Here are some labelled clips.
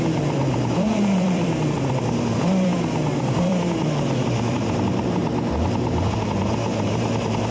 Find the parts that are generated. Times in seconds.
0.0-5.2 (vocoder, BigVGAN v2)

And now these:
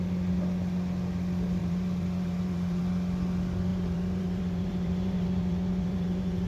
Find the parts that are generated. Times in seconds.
1.6-2.8 (vocoder, BigVGAN v2); 3.7-6.5

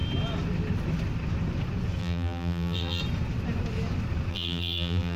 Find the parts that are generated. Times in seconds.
2.0-3.0 (vocoder, BigVGAN v2); 4.3-5.2

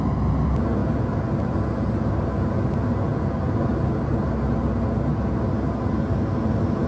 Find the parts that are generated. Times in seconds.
none

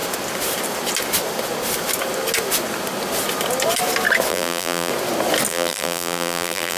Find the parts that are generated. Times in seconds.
4.3-4.9 (vocoder, BigVGAN v2); 5.5-6.8

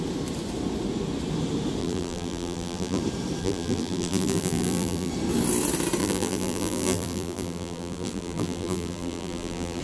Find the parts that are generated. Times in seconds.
1.8-3.0 (vocoder, BigVGAN v2); 3.4-5.1; 6.0-9.8

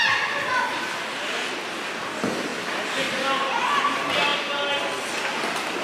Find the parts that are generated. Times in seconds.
0.7-1.5 (vocoder, BigVGAN v2); 2.5-3.9

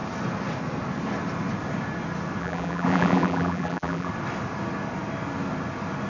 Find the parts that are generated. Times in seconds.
2.4-4.1 (vocoder, BigVGAN v2)